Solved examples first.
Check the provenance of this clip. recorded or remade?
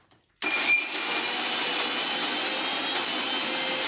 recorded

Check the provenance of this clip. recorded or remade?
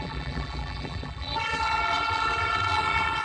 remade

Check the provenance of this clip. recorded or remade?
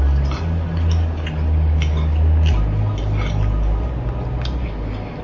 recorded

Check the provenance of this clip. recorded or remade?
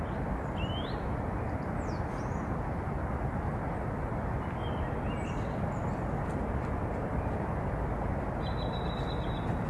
recorded